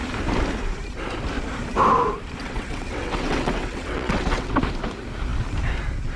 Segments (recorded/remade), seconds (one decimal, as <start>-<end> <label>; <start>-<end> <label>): 0.0-2.4 recorded; 2.4-4.5 remade; 4.5-6.2 recorded